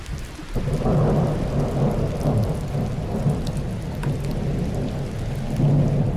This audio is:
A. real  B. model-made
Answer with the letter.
A